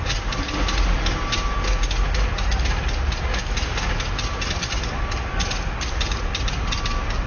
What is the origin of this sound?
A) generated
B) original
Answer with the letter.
B